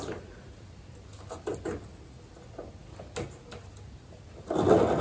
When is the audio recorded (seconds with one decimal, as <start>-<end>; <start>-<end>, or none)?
0.0-5.0